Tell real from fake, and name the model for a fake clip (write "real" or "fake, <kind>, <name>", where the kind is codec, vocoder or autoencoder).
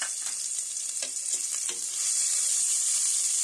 real